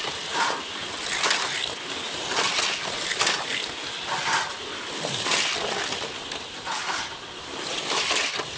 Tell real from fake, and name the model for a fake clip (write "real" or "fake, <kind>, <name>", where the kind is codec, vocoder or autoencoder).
real